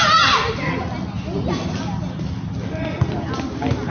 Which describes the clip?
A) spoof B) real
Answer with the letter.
B